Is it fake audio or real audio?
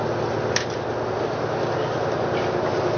real